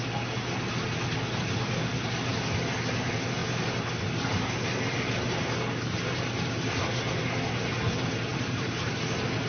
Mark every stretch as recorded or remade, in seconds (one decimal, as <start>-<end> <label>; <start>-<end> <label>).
0.0-3.4 recorded; 3.4-6.7 remade; 6.7-8.3 recorded; 8.3-8.9 remade; 8.9-9.5 recorded

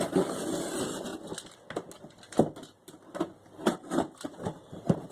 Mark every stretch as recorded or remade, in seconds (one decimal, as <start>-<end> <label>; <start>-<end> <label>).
0.0-1.1 remade; 1.1-3.6 recorded; 3.6-5.1 remade

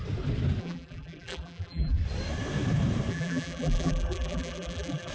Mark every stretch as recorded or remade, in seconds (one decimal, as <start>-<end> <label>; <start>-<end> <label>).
0.0-0.6 recorded; 0.6-2.0 remade; 2.0-3.1 recorded; 3.1-5.1 remade

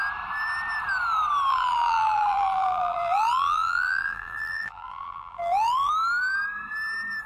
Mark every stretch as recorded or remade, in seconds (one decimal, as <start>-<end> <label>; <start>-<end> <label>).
0.0-1.5 recorded; 1.5-5.9 remade; 5.9-7.3 recorded